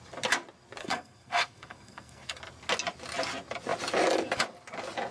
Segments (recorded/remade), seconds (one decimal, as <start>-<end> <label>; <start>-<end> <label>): 0.0-0.8 recorded; 0.8-2.4 remade; 2.4-5.1 recorded